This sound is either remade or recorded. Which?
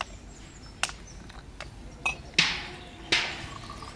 recorded